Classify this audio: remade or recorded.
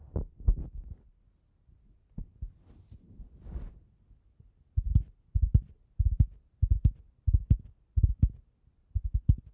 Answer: recorded